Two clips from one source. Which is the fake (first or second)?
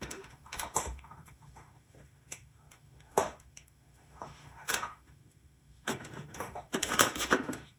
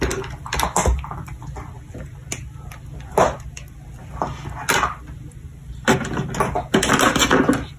first